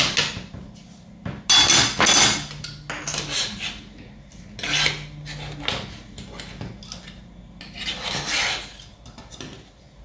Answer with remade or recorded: recorded